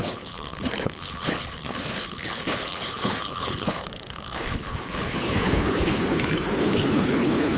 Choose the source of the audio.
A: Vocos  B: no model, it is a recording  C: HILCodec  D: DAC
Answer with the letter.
C